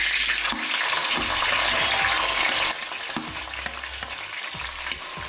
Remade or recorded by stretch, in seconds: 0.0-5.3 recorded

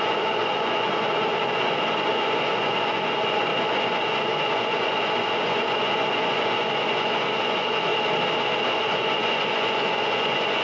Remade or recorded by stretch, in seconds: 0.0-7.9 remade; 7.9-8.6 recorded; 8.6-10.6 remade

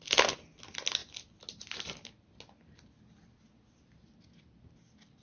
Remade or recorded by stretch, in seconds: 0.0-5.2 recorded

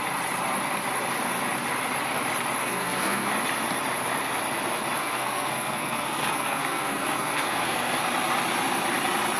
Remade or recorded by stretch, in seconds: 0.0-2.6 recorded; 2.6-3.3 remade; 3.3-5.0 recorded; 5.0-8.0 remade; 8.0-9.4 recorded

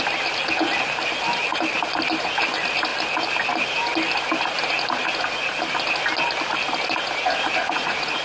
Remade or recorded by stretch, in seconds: 0.0-7.6 recorded; 7.6-8.2 remade